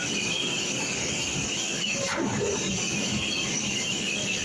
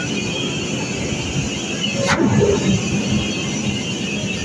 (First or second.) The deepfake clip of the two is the first